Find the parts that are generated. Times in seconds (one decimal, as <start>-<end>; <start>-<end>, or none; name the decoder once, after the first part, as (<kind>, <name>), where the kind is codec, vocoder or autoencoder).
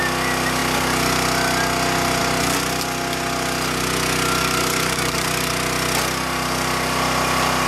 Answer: 4.4-5.5 (codec, DAC)